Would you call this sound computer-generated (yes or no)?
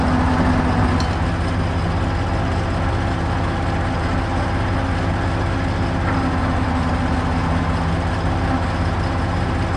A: no